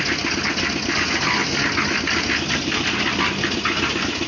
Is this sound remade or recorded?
recorded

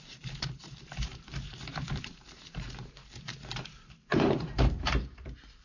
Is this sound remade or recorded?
remade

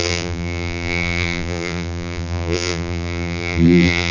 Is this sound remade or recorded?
remade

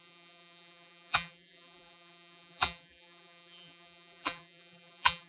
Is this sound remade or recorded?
remade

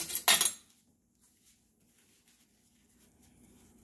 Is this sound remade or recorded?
recorded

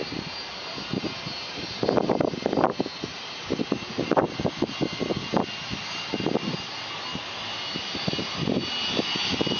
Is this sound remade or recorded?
recorded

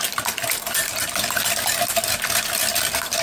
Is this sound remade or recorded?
recorded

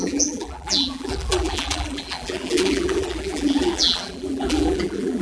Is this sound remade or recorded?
remade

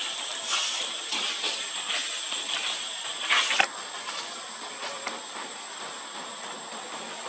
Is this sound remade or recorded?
recorded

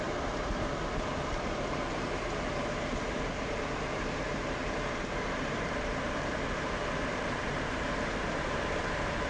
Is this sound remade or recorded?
remade